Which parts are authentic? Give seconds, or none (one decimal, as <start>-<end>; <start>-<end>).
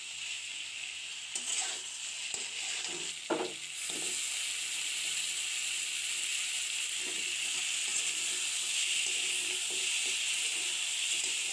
0.0-11.5